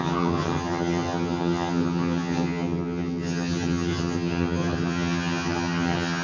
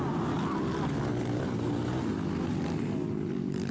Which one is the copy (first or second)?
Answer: first